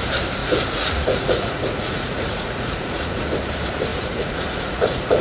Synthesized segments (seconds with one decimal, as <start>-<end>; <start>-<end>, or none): 0.4-3.3; 3.9-5.2